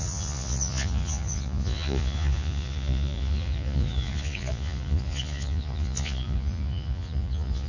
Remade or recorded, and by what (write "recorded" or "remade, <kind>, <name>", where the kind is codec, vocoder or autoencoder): remade, vocoder, Vocos